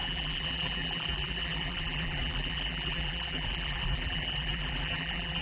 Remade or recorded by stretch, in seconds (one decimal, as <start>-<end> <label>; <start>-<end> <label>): 0.0-5.4 remade